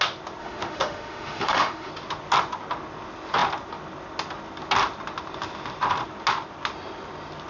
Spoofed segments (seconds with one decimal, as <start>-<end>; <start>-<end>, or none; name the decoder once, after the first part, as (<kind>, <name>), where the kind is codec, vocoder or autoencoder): 0.4-1.9 (autoencoder, DAC-VAE)